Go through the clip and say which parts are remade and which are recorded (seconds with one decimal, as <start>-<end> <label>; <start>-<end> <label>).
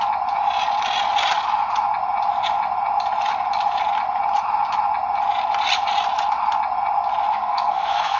0.0-7.3 recorded; 7.3-8.2 remade